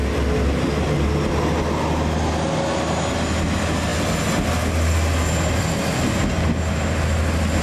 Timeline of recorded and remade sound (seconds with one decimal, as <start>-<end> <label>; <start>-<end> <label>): 0.0-7.6 recorded